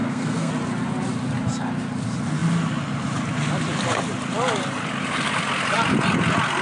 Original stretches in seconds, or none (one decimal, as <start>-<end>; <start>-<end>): 0.5-6.6

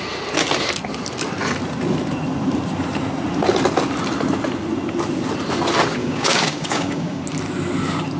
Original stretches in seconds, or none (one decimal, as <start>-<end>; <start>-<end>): 0.0-6.0; 7.2-8.2

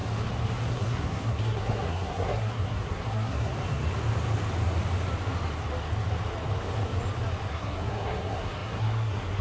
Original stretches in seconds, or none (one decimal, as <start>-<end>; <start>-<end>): 0.0-0.7; 3.5-7.5

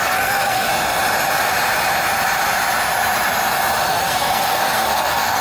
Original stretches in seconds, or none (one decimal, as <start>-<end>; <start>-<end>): 0.7-3.9

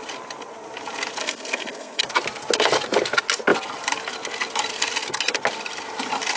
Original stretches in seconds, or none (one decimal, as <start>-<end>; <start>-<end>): 0.0-1.2; 2.0-6.4

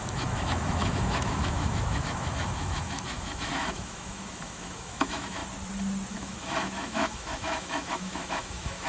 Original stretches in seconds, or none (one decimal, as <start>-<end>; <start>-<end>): 5.4-6.1

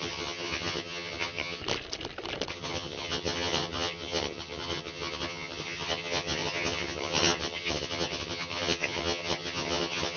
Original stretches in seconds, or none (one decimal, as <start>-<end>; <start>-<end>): 1.6-2.5

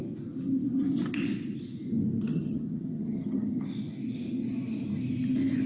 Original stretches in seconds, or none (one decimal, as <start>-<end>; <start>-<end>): 0.0-2.3; 3.6-5.7